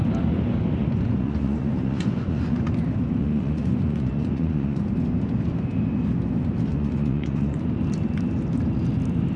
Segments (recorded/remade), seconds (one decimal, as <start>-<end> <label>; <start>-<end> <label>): 0.0-0.8 recorded; 0.8-2.6 remade; 2.6-3.2 recorded; 3.2-4.8 remade; 4.8-6.7 recorded; 6.7-7.6 remade; 7.6-9.4 recorded